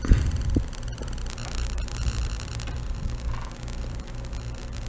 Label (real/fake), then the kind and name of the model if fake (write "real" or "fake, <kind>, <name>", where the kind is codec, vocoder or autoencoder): fake, vocoder, BigVGAN v2